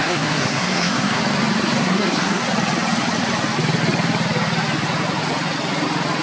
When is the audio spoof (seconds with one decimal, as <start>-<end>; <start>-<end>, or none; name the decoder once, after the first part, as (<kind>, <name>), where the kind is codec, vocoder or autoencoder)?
0.0-1.2 (codec, SNAC); 1.8-2.4